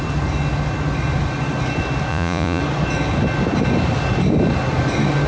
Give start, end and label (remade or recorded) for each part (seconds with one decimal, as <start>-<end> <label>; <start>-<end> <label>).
0.0-2.1 recorded; 2.1-2.6 remade; 2.6-5.3 recorded